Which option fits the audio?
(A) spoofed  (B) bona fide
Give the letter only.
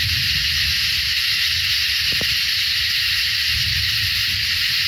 B